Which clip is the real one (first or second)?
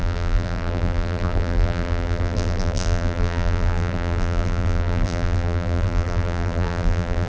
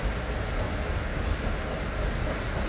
second